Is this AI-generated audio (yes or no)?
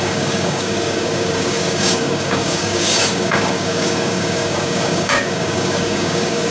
yes